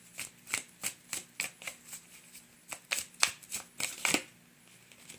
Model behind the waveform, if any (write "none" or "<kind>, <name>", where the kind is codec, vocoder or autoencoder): none